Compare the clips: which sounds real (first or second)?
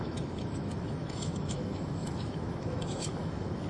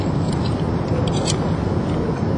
second